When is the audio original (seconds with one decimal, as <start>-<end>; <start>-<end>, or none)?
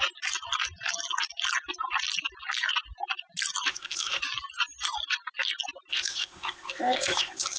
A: 0.0-3.7; 4.2-5.9